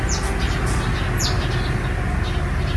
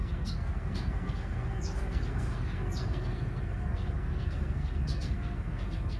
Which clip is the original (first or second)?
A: first